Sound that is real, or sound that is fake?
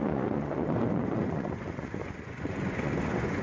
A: fake